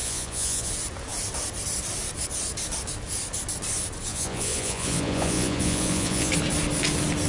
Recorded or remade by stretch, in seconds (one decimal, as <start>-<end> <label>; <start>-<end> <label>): 0.0-0.7 remade; 0.7-4.1 recorded; 4.1-6.3 remade; 6.3-7.3 recorded